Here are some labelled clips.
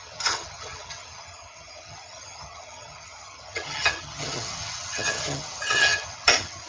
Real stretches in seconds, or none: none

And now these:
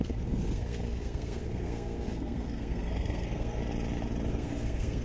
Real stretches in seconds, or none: 3.6-4.3

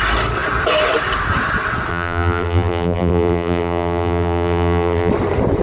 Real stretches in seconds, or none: 0.0-1.9; 5.1-5.6

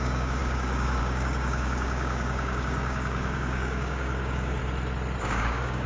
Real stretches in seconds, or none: 4.6-5.2